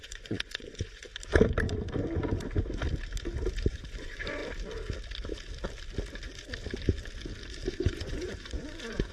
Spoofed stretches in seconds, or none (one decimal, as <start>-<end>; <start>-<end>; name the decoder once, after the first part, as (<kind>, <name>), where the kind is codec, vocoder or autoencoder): 0.0-1.1 (vocoder, Vocos); 3.7-4.4; 7.7-9.1